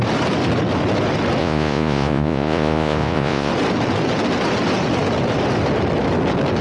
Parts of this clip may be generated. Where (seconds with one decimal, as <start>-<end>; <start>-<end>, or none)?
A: 1.4-3.5